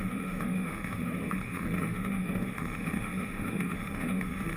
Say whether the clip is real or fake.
fake